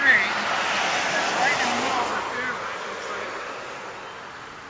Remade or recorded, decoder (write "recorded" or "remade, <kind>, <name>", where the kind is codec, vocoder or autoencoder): recorded